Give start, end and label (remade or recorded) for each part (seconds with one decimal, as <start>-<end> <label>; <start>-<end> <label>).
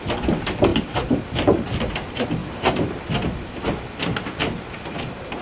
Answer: 0.0-0.7 recorded; 0.7-1.2 remade; 1.2-2.4 recorded; 2.4-3.7 remade; 3.7-5.4 recorded